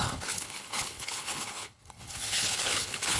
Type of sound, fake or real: fake